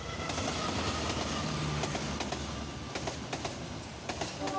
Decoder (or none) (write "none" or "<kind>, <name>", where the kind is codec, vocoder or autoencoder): none